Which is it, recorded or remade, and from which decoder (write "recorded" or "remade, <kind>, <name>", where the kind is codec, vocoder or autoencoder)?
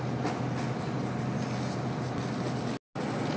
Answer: recorded